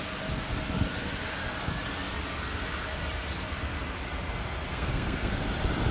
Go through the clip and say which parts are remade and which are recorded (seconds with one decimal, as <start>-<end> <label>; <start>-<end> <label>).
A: 0.0-4.7 recorded; 4.7-5.3 remade; 5.3-5.9 recorded